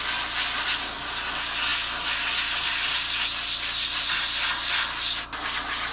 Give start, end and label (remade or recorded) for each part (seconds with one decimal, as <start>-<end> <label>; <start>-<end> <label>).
0.0-5.9 recorded